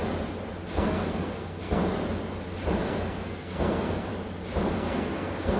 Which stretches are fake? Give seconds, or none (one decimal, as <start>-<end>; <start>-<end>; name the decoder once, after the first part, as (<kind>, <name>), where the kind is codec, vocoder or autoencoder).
0.7-1.8 (codec, SNAC); 2.7-4.1; 4.7-5.6